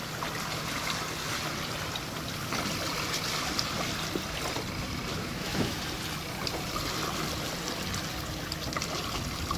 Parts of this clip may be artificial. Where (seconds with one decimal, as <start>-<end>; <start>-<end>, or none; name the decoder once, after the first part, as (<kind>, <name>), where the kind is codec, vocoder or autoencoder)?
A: 5.1-5.8 (autoencoder, DAC-VAE)